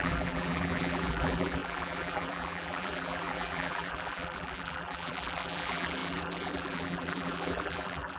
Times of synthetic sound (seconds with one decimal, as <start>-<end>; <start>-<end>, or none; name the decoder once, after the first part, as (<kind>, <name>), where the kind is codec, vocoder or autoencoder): 0.0-8.2 (vocoder, BigVGAN v2)